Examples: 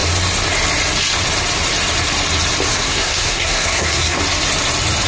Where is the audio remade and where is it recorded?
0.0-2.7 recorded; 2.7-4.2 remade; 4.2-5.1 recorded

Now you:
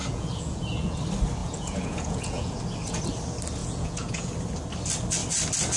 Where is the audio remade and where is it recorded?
0.0-1.0 remade; 1.0-1.4 recorded; 1.4-2.6 remade; 2.6-3.6 recorded; 3.6-4.3 remade; 4.3-5.8 recorded

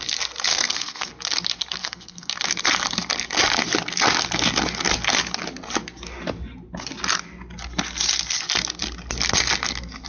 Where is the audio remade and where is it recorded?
0.0-0.5 recorded; 0.5-1.1 remade; 1.1-1.8 recorded; 1.8-2.3 remade; 2.3-10.1 recorded

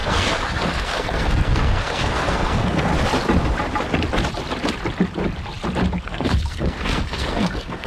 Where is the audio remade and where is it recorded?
0.0-2.9 remade; 2.9-6.0 recorded; 6.0-7.9 remade